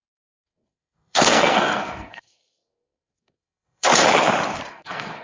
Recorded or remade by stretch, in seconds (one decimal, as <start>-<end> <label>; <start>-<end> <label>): 0.0-3.9 remade; 3.9-4.7 recorded; 4.7-5.2 remade

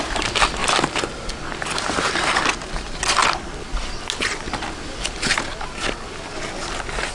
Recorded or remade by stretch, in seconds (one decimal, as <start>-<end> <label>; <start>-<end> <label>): 0.0-7.1 recorded

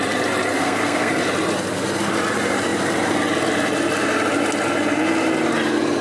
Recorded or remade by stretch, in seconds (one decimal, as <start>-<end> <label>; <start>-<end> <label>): 0.0-0.5 recorded; 0.5-1.1 remade; 1.1-6.0 recorded

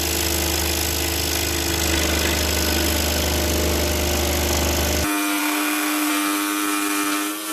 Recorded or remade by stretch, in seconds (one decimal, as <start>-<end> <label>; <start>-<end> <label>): 0.0-5.4 recorded; 5.4-6.1 remade; 6.1-7.5 recorded

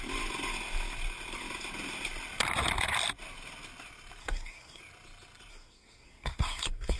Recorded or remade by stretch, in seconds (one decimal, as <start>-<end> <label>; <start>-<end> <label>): 0.0-4.2 recorded; 4.2-4.8 remade; 4.8-5.5 recorded; 5.5-7.0 remade

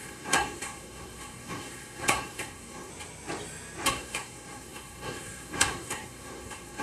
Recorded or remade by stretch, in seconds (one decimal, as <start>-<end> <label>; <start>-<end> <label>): 0.0-2.9 remade; 2.9-3.9 recorded; 3.9-6.8 remade